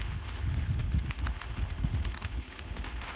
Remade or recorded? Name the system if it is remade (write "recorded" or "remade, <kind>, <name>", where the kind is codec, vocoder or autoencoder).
remade, autoencoder, DAC-VAE